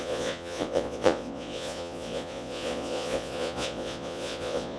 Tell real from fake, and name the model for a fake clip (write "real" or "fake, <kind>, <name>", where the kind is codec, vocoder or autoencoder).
fake, vocoder, Vocos